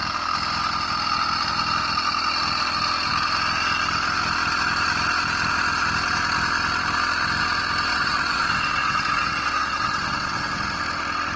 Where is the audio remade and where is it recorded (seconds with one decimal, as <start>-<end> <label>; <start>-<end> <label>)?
0.0-7.9 recorded; 7.9-10.8 remade; 10.8-11.4 recorded

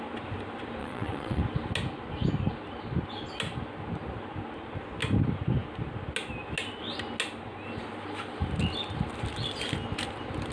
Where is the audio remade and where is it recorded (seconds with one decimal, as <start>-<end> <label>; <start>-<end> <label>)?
0.0-0.8 recorded; 0.8-1.4 remade; 1.4-10.5 recorded

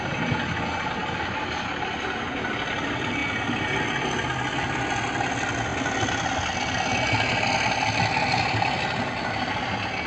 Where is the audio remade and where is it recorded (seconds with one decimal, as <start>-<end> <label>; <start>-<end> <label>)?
0.0-10.1 recorded

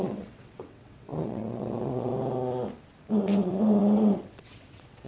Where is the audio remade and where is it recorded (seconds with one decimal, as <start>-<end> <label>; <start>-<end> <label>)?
0.0-2.1 remade; 2.1-3.1 recorded; 3.1-5.1 remade

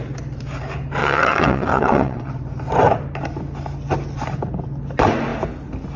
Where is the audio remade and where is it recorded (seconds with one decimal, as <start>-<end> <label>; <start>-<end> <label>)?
0.0-1.0 recorded; 1.0-2.3 remade; 2.3-6.0 recorded

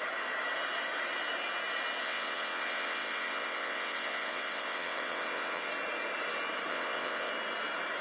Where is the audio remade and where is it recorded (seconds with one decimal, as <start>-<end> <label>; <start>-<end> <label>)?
0.0-2.0 recorded; 2.0-5.7 remade; 5.7-6.7 recorded; 6.7-7.3 remade; 7.3-8.0 recorded

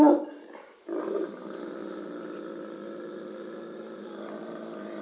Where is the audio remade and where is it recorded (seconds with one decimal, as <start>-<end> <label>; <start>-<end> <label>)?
0.0-5.0 recorded